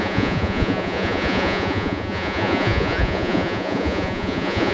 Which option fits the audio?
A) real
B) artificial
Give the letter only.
B